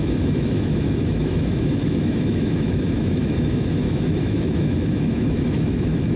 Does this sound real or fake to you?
fake